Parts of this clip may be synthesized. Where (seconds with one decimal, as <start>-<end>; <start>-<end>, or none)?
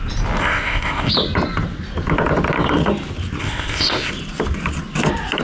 0.4-1.1; 3.4-4.1